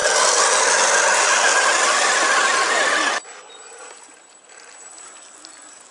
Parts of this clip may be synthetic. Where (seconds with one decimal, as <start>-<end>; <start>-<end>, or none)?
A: none